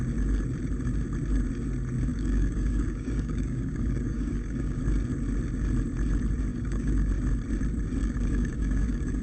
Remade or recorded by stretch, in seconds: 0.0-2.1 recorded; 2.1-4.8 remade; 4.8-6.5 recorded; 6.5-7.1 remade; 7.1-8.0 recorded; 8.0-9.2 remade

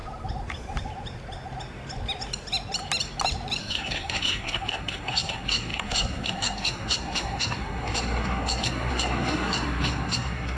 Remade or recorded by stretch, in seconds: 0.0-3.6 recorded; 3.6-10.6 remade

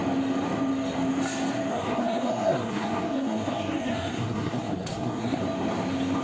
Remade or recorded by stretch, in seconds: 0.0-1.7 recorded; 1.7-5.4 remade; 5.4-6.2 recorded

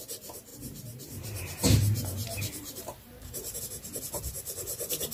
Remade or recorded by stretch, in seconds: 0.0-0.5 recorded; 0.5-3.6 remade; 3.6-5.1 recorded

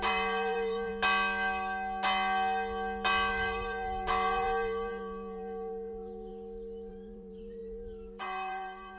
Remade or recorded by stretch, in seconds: 0.0-0.9 remade; 0.9-3.3 recorded; 3.3-6.3 remade; 6.3-6.9 recorded; 6.9-9.0 remade